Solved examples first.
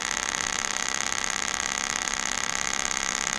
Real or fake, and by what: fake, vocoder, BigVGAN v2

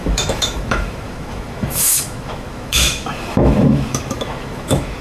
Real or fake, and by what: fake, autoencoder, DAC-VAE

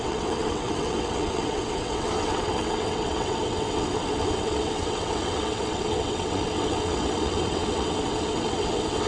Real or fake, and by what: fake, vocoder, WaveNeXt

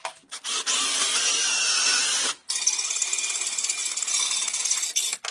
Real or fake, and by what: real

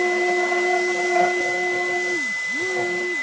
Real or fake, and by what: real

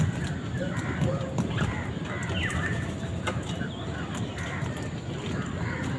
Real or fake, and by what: real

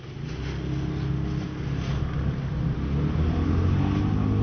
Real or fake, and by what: real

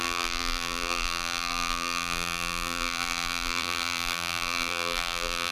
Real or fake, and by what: fake, vocoder, BigVGAN v2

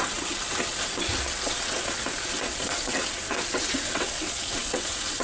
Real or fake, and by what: fake, vocoder, WaveNeXt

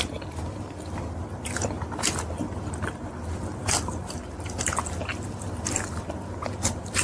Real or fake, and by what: fake, vocoder, BigVGAN v2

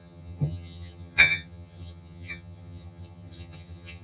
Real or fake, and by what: fake, vocoder, HiFi-GAN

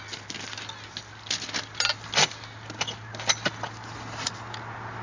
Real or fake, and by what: real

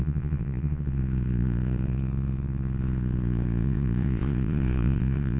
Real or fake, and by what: fake, vocoder, Vocos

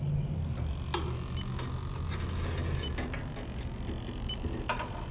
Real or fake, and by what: real